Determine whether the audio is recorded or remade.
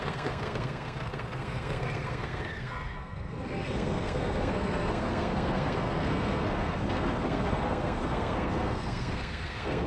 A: remade